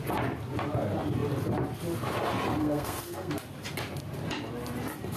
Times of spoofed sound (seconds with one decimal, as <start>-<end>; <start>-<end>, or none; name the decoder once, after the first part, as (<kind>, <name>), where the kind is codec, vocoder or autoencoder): 2.6-3.3 (codec, SNAC)